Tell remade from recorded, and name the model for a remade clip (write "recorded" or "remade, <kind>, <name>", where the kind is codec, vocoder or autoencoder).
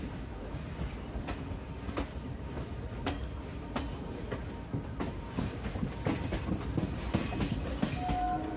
recorded